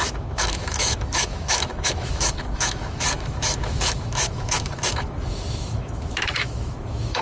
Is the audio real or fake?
fake